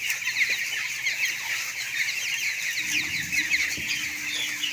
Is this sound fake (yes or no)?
no